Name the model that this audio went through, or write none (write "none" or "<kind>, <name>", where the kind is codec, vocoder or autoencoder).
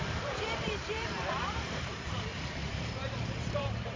vocoder, BigVGAN v2